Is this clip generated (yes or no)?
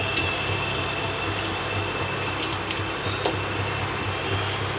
no